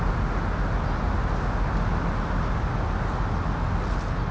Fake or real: real